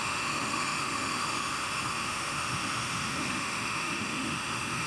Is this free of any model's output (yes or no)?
no